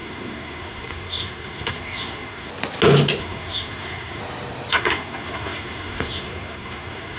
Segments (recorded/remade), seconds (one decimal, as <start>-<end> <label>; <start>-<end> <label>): 0.0-2.5 remade; 2.5-3.2 recorded; 3.2-4.2 remade; 4.2-4.7 recorded; 4.7-7.2 remade